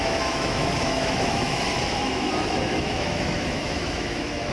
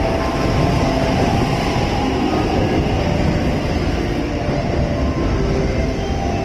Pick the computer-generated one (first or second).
first